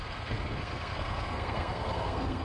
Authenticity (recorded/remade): remade